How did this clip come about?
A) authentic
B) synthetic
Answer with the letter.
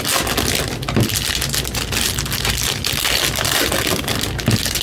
A